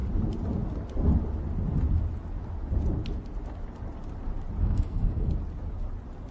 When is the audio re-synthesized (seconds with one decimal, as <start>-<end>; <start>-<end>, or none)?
4.6-5.3